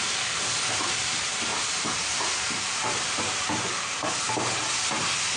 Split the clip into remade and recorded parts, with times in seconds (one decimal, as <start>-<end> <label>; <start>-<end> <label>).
0.0-1.5 recorded; 1.5-4.2 remade; 4.2-5.4 recorded